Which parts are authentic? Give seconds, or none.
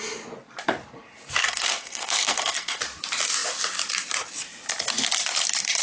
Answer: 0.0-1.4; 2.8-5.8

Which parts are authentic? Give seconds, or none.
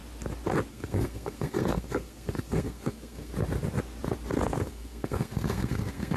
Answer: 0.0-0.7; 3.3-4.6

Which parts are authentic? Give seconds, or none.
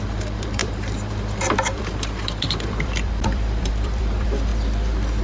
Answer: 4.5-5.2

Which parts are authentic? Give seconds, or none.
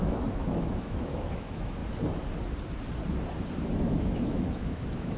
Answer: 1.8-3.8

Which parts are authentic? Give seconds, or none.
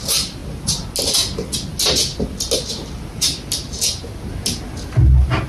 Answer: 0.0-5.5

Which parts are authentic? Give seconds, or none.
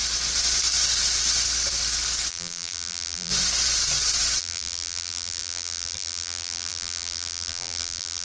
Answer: 0.0-2.3; 3.3-4.4